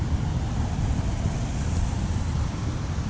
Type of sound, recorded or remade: recorded